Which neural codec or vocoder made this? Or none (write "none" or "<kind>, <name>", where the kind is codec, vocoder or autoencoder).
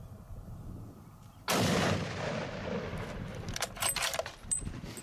none